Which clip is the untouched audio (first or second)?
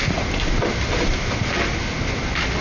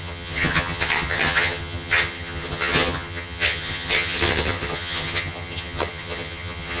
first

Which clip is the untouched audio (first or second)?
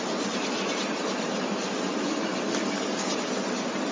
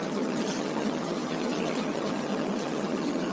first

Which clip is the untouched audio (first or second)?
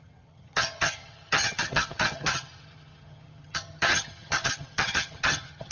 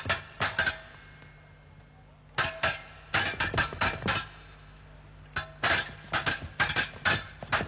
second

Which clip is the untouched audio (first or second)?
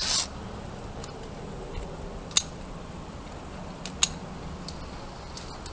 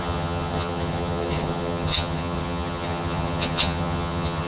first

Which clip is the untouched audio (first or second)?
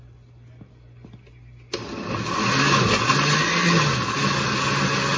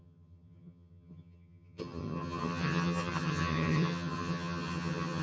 first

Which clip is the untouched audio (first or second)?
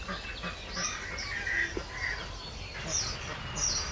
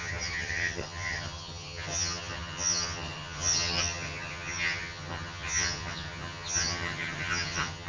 first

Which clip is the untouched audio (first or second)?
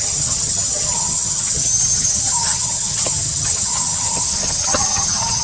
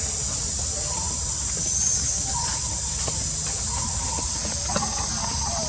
second